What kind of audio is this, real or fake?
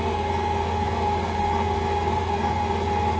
real